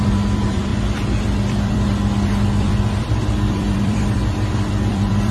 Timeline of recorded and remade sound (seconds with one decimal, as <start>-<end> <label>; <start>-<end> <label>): 0.0-5.3 remade